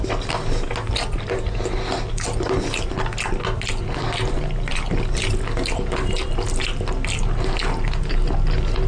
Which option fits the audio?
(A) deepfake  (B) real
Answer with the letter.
B